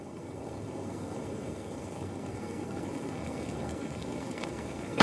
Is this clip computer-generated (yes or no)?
yes